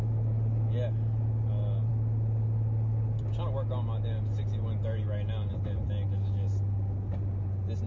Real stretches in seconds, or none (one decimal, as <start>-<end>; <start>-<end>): 0.0-7.9

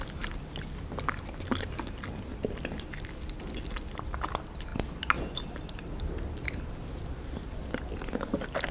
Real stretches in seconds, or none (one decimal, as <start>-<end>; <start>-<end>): 0.0-8.7

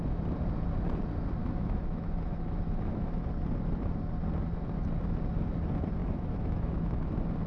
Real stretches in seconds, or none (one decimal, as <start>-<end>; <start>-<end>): 0.0-1.4; 3.3-6.0; 7.1-7.5

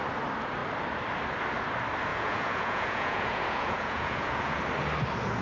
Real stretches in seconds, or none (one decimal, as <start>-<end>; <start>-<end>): 0.0-2.1; 4.6-5.4